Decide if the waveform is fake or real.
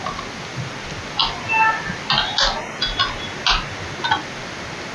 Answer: real